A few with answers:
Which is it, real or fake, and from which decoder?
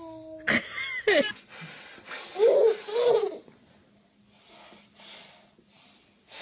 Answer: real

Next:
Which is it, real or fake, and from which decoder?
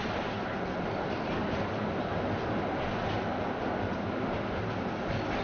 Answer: real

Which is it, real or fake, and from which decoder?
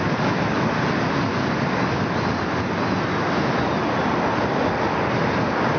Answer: real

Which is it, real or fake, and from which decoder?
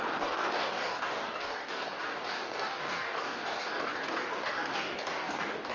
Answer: fake, codec, DAC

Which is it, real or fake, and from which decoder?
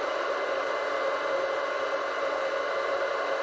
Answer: real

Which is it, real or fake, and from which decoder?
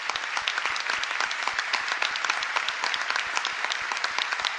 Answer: real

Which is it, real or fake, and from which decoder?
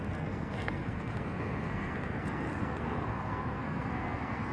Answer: fake, codec, SNAC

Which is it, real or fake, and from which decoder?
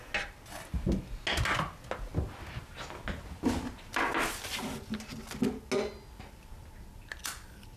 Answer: real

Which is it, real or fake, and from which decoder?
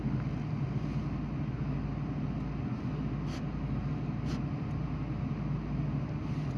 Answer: real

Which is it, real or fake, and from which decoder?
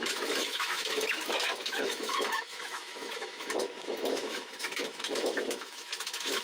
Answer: fake, autoencoder, DAC-VAE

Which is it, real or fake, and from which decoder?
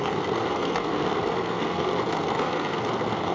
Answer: fake, codec, SNAC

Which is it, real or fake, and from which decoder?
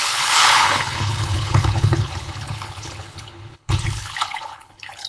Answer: fake, codec, HILCodec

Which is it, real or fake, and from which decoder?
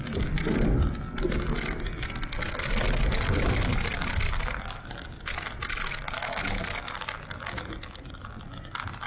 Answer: real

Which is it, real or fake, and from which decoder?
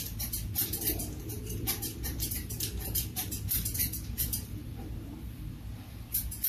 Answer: fake, vocoder, BigVGAN v2